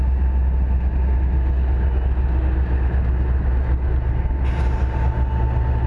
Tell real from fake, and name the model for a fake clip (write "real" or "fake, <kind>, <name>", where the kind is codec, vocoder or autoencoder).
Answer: real